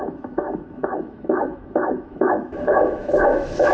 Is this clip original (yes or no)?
no